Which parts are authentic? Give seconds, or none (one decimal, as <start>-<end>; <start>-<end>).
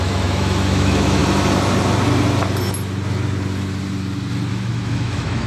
1.2-4.5